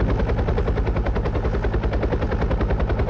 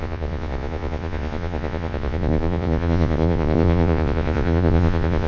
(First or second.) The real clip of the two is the first